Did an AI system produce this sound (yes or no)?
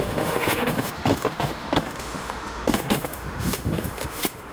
yes